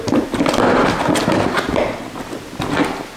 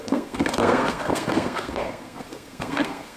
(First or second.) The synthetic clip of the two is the second